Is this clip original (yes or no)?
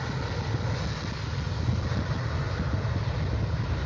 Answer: yes